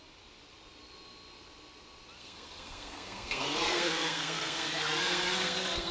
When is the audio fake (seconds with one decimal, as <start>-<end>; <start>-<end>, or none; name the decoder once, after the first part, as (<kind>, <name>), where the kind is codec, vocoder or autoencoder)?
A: 2.2-5.9 (codec, SNAC)